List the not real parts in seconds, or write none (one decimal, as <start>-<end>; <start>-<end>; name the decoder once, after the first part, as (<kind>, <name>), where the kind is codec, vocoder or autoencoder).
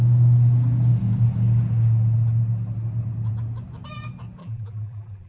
4.4-5.3 (vocoder, BigVGAN v2)